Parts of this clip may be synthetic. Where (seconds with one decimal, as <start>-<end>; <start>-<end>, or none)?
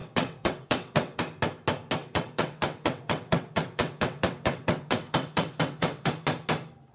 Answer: 0.0-1.2; 2.0-6.1